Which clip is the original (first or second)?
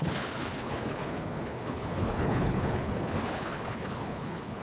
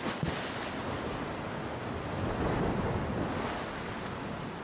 second